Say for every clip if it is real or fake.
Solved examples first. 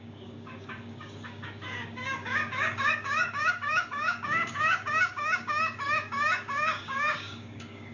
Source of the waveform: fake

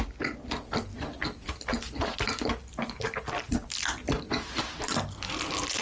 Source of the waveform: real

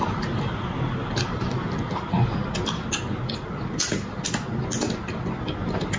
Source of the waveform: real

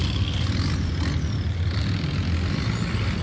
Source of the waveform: real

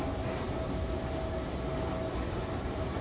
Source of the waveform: real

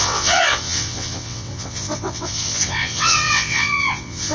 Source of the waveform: fake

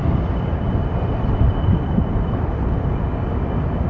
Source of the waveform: fake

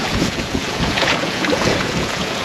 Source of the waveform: fake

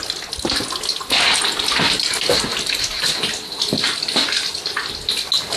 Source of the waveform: real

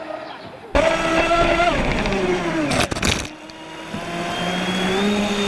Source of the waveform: real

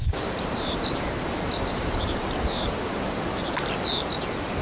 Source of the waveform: fake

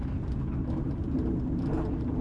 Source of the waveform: real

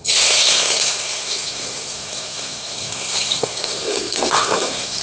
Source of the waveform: fake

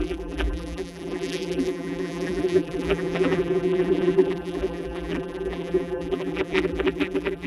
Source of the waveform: fake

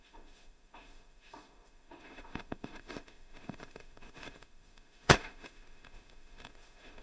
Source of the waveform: fake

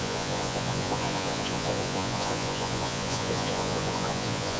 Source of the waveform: fake